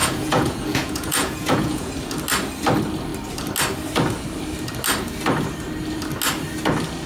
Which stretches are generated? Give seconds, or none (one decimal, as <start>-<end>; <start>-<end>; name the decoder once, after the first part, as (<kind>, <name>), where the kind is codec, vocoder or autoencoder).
0.0-1.9 (vocoder, Vocos)